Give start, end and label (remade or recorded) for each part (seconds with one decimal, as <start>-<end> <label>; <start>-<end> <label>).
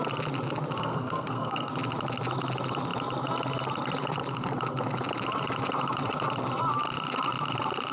0.0-0.8 recorded; 0.8-1.7 remade; 1.7-7.9 recorded